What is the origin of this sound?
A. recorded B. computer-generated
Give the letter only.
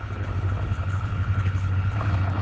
B